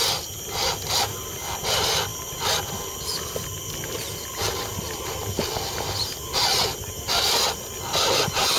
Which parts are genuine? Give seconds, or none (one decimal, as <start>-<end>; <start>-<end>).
0.0-8.6